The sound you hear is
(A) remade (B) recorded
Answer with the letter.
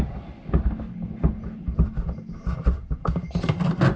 B